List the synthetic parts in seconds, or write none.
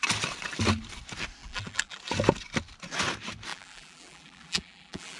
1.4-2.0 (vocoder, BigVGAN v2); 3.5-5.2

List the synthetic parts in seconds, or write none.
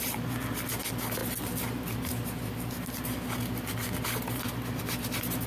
none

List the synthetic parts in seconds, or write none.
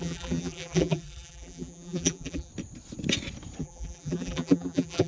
0.0-2.5 (vocoder, BigVGAN v2); 3.6-5.1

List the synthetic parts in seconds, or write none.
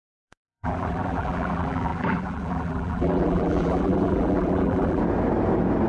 0.0-5.0 (vocoder, BigVGAN v2)